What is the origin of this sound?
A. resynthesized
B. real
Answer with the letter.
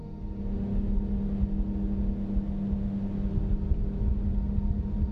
B